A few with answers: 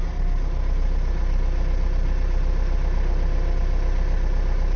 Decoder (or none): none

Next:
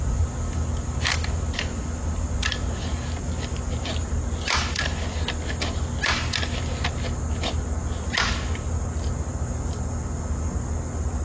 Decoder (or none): none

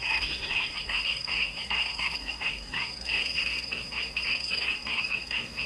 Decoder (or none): codec, SNAC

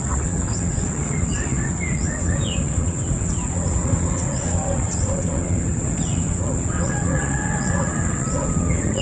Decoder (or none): vocoder, WaveNeXt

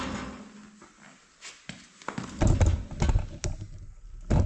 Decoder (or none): none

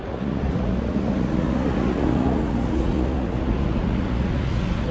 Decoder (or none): vocoder, Vocos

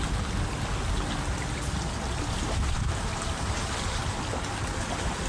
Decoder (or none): none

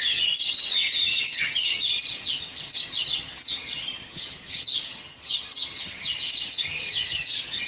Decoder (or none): vocoder, HiFi-GAN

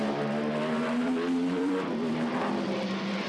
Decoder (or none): vocoder, BigVGAN v2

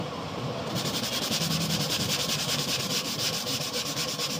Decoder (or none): vocoder, BigVGAN v2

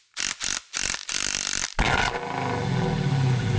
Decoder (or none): none